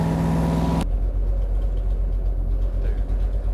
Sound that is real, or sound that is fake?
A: real